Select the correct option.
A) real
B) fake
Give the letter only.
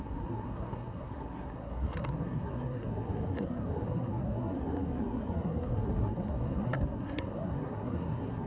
B